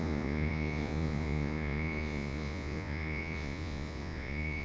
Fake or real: fake